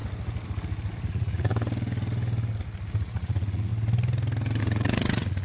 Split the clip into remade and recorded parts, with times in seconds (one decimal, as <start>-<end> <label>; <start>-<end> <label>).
0.0-1.1 recorded; 1.1-1.5 remade; 1.5-3.0 recorded; 3.0-3.7 remade; 3.7-4.6 recorded; 4.6-5.4 remade